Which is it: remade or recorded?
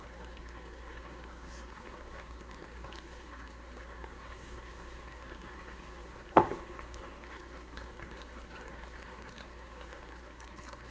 remade